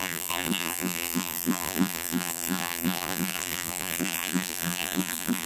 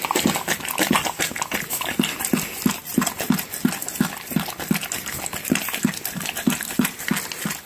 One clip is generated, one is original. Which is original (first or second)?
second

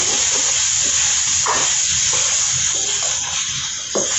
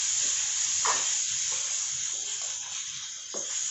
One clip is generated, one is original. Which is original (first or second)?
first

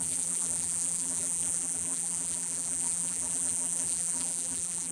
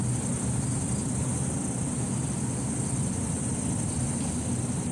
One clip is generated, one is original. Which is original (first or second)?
second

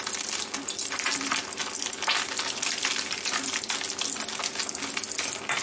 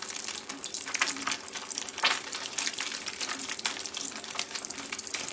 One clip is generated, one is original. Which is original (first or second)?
first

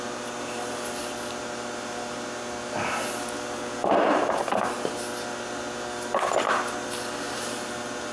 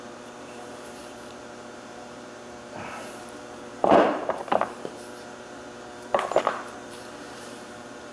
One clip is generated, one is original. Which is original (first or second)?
first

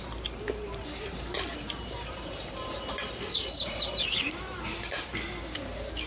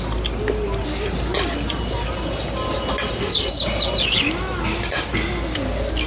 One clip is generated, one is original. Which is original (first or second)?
second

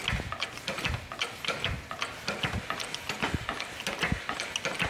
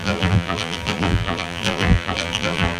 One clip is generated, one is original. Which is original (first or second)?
first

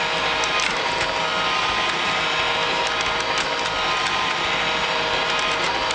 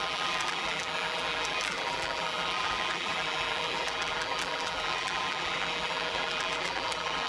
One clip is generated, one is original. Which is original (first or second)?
first